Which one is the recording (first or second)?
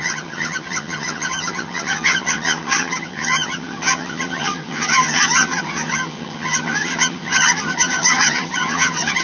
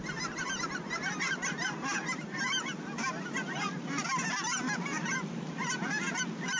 second